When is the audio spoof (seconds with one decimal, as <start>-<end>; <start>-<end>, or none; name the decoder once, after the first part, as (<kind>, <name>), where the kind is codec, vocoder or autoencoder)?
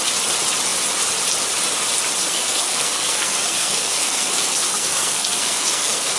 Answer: 2.2-6.2 (codec, SNAC)